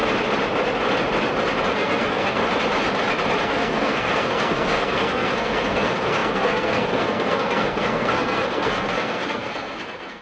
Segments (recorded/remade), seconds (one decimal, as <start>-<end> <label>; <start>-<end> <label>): 0.0-1.7 recorded; 1.7-2.4 remade; 2.4-3.4 recorded; 3.4-10.2 remade